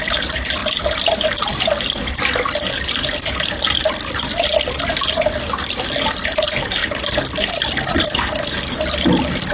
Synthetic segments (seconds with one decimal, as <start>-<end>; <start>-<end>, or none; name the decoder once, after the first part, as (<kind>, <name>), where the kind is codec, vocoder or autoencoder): none

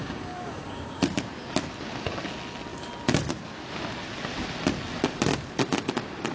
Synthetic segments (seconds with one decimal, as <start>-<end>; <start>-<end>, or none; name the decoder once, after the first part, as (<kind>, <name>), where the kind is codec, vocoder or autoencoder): 0.0-1.0 (codec, DAC)

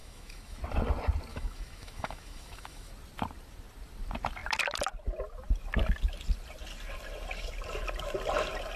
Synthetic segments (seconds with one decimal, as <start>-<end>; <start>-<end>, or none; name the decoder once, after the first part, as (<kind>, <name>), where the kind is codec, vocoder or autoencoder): 0.0-0.6 (autoencoder, DAC-VAE); 1.3-2.9

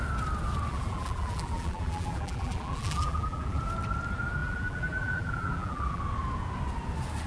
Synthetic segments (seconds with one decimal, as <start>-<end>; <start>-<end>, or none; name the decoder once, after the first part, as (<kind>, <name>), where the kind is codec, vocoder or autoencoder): 0.7-3.6 (vocoder, BigVGAN v2); 4.4-6.0

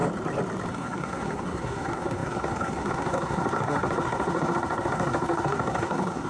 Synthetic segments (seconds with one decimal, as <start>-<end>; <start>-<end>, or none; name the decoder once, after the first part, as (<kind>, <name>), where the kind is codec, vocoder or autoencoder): 0.7-6.3 (codec, SNAC)

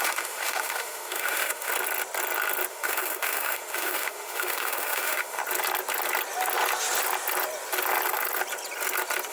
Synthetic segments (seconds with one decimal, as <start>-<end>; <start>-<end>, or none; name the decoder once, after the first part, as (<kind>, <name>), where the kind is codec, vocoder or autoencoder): 0.0-1.7 (autoencoder, DAC-VAE); 2.7-5.4

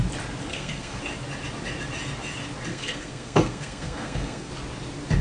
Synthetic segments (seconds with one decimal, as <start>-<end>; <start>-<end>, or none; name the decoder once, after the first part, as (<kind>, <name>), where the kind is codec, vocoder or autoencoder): 0.5-1.0 (codec, SNAC); 2.7-4.5

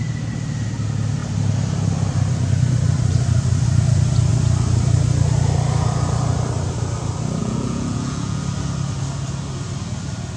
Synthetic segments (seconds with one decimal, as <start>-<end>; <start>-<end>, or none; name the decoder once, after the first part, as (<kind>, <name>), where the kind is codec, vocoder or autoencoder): 7.4-8.4 (vocoder, Vocos)